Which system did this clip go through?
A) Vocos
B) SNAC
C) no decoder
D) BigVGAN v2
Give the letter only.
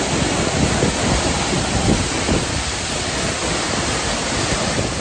C